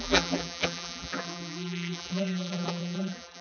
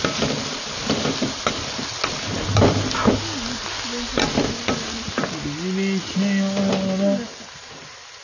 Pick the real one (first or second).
second